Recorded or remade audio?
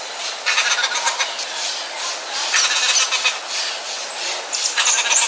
recorded